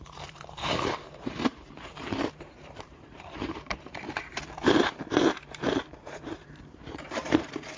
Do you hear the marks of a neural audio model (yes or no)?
yes